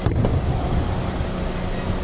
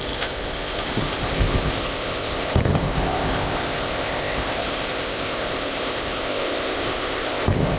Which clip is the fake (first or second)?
second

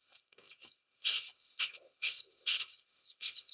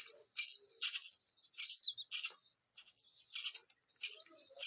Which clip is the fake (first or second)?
first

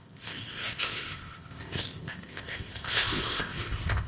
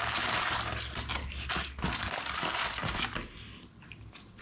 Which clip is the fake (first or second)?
first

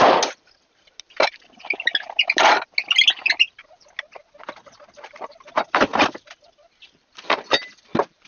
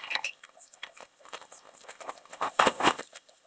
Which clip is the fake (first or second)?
second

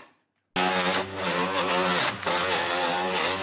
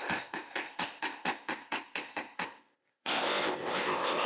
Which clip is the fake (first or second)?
second